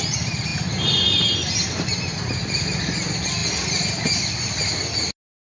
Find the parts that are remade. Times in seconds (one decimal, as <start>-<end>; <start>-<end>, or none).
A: none

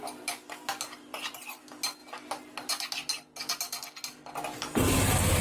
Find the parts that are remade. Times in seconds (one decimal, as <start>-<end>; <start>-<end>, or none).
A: 1.0-1.6

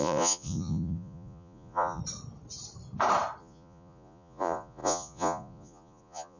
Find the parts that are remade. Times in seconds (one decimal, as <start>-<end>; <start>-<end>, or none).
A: 0.0-2.0; 3.4-6.4

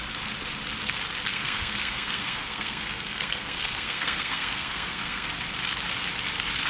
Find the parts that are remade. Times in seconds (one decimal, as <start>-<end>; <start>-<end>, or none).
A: 1.3-5.3

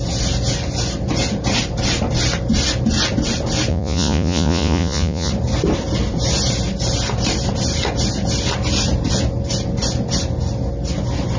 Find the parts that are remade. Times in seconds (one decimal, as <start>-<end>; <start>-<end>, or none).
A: 3.7-5.3

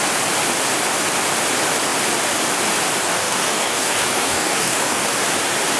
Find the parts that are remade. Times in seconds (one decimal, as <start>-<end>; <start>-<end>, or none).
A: 3.0-5.1

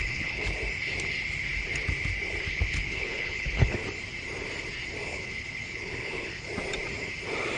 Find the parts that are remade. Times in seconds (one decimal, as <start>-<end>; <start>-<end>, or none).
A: 0.0-0.6; 2.5-3.8; 5.0-6.5